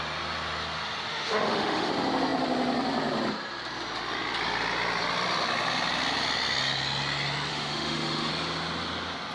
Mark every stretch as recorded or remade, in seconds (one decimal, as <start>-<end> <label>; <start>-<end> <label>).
0.0-1.1 recorded; 1.1-1.9 remade; 1.9-7.5 recorded; 7.5-8.3 remade; 8.3-9.3 recorded